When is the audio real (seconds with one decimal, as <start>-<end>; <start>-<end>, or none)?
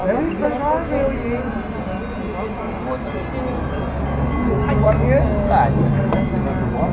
0.0-6.9